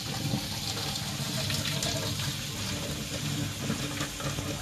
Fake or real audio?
real